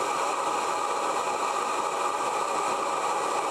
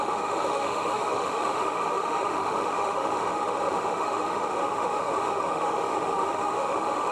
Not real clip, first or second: second